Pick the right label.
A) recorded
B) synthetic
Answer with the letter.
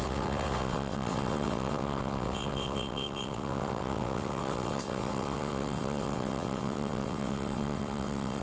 B